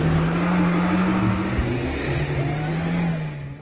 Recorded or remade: recorded